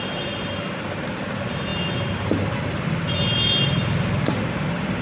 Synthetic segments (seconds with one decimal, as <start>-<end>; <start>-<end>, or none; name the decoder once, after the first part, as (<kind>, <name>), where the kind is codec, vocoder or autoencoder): none

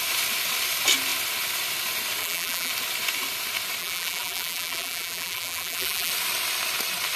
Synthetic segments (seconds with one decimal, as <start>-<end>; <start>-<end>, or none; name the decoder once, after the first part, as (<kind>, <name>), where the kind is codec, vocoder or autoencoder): 2.2-2.7 (vocoder, BigVGAN v2); 3.8-6.1

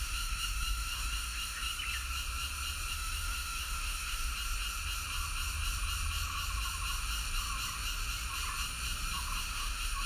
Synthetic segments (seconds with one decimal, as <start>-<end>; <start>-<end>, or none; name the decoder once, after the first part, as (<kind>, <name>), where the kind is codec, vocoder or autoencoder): 0.0-1.7 (autoencoder, DAC-VAE); 2.9-4.3; 9.4-10.1